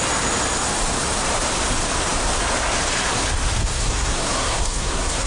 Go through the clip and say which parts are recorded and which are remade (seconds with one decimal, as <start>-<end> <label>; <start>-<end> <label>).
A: 0.0-3.6 recorded; 3.6-5.3 remade